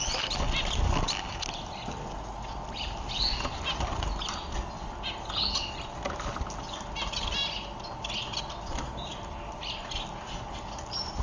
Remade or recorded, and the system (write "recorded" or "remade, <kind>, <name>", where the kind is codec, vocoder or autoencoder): recorded